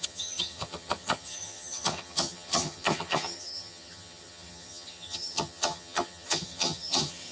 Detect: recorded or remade remade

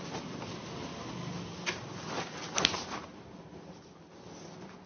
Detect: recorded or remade recorded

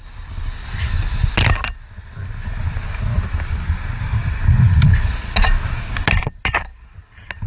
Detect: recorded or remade recorded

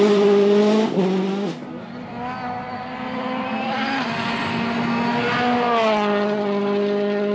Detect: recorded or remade recorded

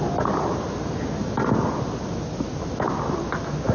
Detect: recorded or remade recorded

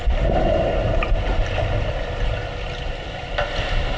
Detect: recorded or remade recorded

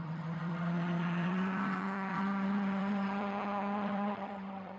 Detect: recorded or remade remade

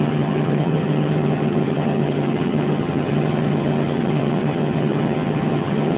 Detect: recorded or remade remade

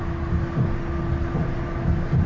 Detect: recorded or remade recorded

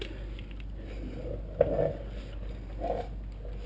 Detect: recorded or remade recorded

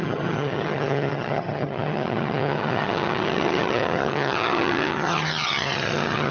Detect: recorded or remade remade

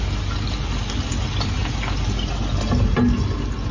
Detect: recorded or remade recorded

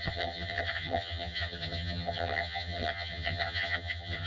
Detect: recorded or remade remade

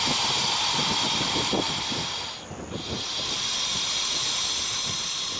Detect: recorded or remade recorded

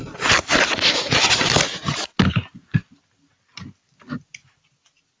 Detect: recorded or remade recorded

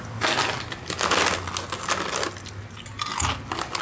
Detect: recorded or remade recorded